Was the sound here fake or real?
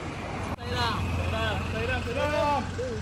real